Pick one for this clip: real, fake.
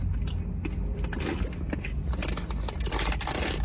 real